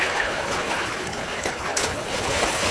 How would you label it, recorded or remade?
remade